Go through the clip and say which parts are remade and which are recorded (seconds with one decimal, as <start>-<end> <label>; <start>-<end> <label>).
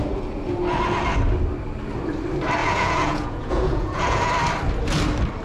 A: 0.0-2.6 recorded; 2.6-4.3 remade; 4.3-5.4 recorded